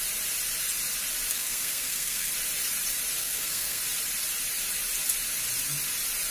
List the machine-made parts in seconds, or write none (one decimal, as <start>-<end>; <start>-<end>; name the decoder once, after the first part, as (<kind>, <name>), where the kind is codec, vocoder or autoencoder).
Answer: 1.3-2.3 (codec, SNAC); 3.2-3.8